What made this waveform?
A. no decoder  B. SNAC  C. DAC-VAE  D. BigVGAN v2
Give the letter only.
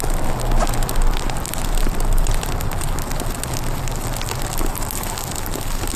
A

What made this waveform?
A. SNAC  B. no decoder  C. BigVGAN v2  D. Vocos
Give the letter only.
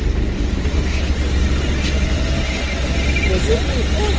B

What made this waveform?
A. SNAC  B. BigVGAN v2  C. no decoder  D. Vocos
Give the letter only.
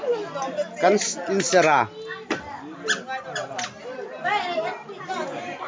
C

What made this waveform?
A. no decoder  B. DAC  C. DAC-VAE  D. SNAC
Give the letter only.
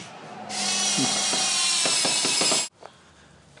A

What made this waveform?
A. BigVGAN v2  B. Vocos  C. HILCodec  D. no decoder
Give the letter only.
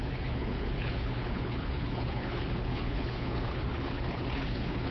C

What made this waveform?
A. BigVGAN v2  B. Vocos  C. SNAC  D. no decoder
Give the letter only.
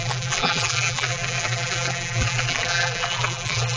A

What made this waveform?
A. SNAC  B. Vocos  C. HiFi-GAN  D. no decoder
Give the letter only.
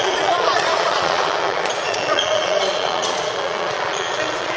B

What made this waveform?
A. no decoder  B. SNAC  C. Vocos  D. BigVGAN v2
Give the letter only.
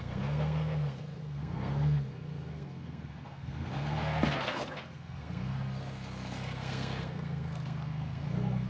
B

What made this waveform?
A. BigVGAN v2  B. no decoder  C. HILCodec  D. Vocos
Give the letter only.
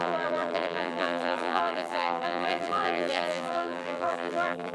A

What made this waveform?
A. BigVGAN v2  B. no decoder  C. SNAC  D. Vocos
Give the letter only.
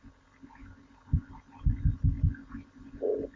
B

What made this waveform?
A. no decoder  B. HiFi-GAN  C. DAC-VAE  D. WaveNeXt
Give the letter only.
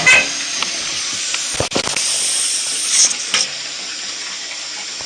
A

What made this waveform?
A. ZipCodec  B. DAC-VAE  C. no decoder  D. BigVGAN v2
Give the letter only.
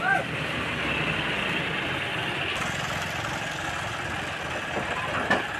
C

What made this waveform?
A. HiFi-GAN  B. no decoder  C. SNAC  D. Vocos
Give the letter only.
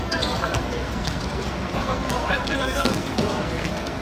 C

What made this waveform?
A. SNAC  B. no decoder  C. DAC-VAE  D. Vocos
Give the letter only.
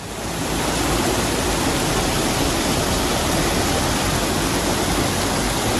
B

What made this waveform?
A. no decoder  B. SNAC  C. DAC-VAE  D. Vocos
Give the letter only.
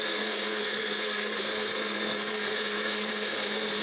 B